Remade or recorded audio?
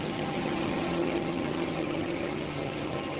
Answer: remade